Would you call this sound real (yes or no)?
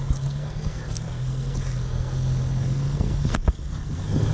no